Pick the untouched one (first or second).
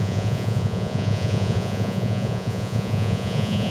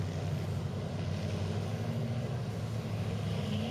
second